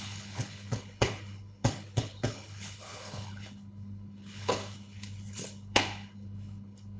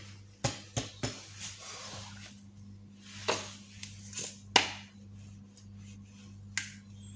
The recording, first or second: second